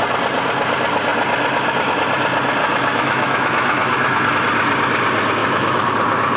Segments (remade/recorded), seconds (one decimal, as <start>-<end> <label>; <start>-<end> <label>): 0.0-2.6 recorded; 2.6-4.3 remade; 4.3-5.4 recorded; 5.4-5.9 remade; 5.9-6.4 recorded